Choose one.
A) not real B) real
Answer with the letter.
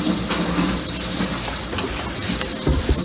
B